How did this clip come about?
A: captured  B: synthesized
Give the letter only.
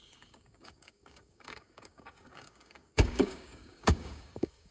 B